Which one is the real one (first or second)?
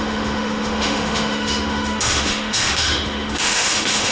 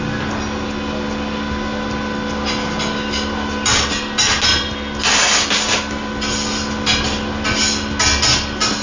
second